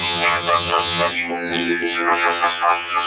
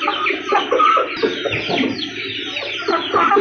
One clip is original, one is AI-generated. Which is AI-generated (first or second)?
first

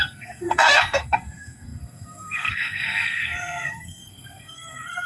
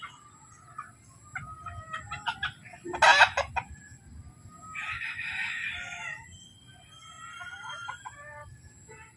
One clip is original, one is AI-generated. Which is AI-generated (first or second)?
first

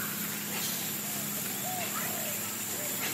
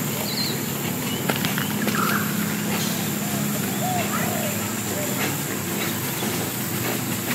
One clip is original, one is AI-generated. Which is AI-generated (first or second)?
first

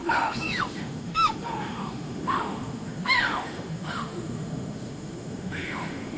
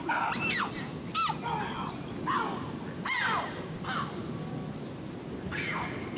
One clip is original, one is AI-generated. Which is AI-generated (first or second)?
first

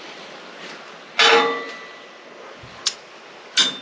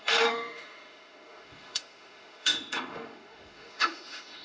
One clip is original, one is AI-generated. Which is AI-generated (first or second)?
second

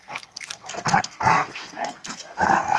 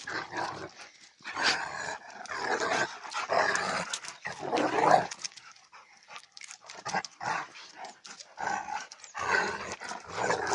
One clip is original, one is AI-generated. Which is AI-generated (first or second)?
first